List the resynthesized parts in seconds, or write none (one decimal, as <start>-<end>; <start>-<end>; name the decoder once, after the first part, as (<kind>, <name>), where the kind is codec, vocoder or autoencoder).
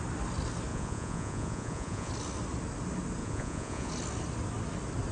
0.7-2.1 (vocoder, Vocos); 3.2-3.9